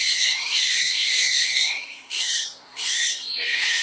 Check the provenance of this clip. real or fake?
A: fake